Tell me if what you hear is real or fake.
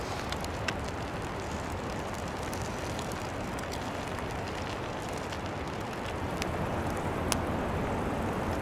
real